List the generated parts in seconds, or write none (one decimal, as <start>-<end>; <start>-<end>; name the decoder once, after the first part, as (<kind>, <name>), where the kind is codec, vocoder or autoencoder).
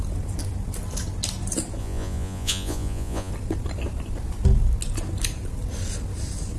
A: 1.8-3.3 (vocoder, Vocos)